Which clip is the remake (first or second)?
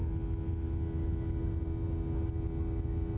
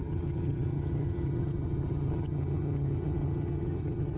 second